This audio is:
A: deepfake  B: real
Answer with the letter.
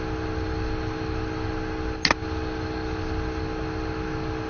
B